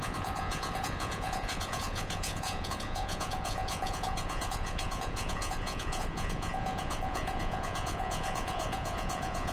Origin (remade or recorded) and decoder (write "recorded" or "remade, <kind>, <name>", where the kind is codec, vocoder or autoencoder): remade, vocoder, Vocos